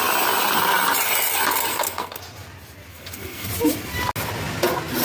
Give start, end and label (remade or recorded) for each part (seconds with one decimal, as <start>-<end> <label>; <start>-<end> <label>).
0.0-1.7 recorded; 1.7-2.2 remade; 2.2-2.9 recorded; 2.9-3.5 remade; 3.5-5.0 recorded

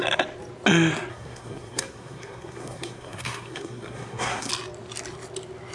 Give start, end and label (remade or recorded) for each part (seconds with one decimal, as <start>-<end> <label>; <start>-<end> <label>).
0.0-1.1 recorded; 1.1-4.5 remade; 4.5-5.7 recorded

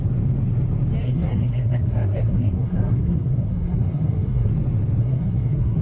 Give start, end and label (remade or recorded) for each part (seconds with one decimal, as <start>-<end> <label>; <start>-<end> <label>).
0.0-1.0 recorded; 1.0-4.5 remade; 4.5-5.0 recorded; 5.0-5.8 remade

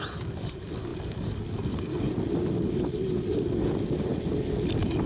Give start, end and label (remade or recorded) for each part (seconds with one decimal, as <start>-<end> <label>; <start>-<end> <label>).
0.0-5.1 recorded

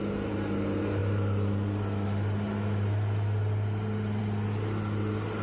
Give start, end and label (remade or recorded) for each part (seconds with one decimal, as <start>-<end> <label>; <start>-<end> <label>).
0.0-5.4 recorded